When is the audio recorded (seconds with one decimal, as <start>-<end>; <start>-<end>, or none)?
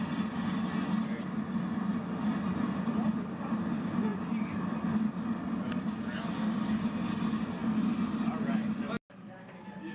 0.0-9.9